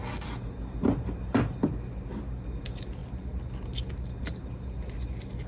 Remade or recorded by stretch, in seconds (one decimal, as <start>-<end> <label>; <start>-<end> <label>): 0.0-5.5 recorded